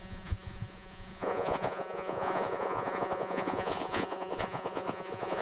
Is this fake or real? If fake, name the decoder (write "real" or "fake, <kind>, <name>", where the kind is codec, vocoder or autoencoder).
fake, vocoder, Vocos